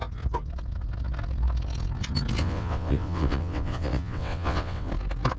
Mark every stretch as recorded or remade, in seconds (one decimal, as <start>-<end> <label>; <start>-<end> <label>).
0.0-2.4 recorded; 2.4-4.9 remade; 4.9-5.4 recorded